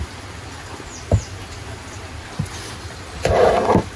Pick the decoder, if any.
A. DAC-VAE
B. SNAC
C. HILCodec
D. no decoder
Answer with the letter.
D